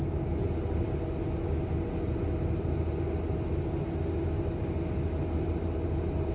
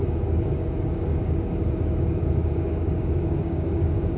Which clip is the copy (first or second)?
second